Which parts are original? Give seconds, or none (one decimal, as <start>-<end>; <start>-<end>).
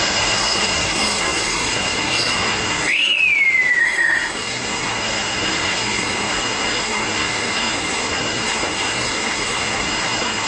3.2-3.8